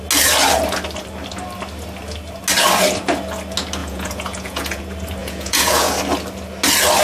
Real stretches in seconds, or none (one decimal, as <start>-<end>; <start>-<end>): 0.0-3.8; 4.8-5.2; 5.9-7.0